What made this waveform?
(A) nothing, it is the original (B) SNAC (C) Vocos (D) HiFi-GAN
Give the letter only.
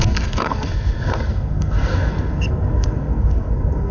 B